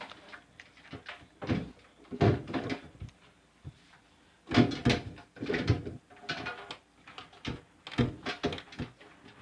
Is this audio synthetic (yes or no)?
no